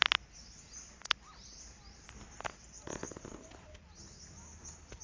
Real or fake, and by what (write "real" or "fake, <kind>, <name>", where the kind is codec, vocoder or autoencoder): real